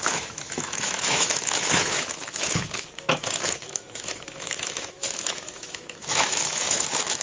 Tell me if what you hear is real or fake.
fake